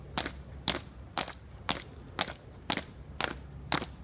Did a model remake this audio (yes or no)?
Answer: no